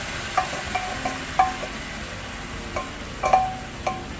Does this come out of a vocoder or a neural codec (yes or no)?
no